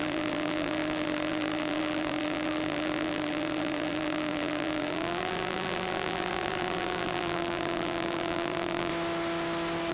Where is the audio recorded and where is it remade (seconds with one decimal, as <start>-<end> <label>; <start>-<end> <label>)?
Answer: 0.0-8.9 remade; 8.9-9.9 recorded